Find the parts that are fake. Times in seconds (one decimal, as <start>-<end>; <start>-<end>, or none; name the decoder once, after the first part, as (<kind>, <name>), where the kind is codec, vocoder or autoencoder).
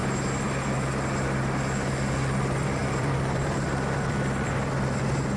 2.8-4.7 (vocoder, BigVGAN v2)